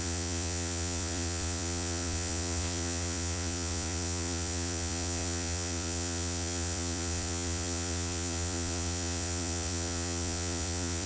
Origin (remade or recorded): remade